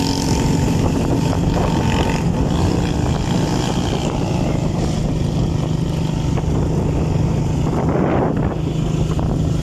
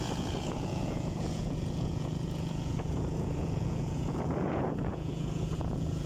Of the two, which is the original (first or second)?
first